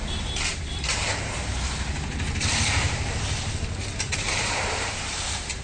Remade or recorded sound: remade